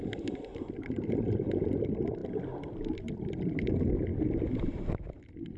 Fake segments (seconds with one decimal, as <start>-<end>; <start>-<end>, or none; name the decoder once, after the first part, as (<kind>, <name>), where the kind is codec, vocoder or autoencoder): none